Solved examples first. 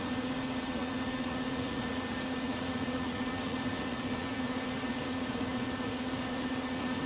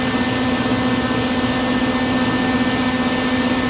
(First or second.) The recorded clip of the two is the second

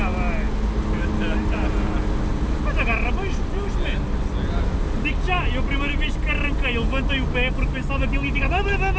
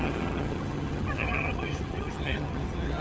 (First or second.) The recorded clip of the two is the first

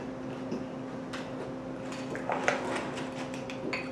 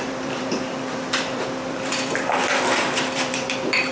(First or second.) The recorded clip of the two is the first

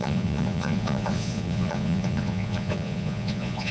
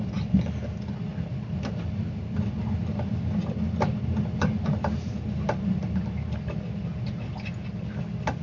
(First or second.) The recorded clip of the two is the second